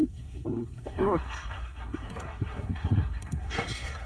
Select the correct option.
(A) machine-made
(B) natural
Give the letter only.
A